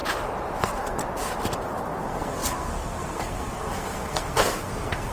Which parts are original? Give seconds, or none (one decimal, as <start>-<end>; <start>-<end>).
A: 0.0-0.6; 1.0-2.0